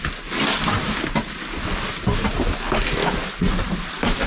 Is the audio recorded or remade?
recorded